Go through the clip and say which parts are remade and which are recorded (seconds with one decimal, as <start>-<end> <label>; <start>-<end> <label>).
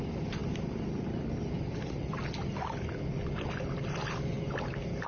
0.0-5.1 recorded